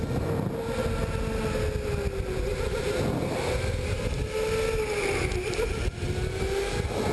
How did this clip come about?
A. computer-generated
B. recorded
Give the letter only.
B